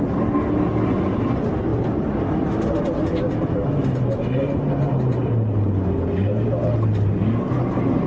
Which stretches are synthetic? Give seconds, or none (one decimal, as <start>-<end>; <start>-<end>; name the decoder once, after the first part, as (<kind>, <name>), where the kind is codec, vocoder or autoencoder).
none

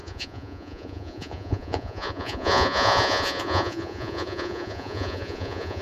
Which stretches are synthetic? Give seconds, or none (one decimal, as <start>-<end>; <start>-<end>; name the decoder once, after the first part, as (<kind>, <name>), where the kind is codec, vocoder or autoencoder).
0.0-5.8 (vocoder, Vocos)

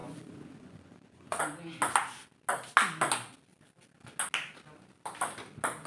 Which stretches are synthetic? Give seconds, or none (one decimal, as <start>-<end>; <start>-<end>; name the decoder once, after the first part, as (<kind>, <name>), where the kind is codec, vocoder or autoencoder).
0.0-1.4 (vocoder, Vocos)

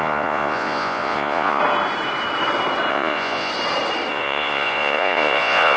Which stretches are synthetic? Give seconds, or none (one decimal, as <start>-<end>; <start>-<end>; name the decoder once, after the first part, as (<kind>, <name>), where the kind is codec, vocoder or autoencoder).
0.0-1.6 (vocoder, Vocos); 2.9-3.5; 4.1-5.8

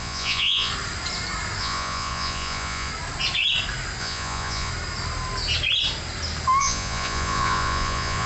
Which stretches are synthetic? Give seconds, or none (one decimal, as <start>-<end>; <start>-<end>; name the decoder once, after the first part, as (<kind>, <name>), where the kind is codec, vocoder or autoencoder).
0.0-0.7 (vocoder, Vocos); 1.6-2.9; 4.0-4.7; 6.6-8.3